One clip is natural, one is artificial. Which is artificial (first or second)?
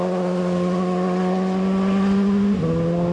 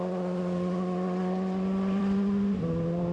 second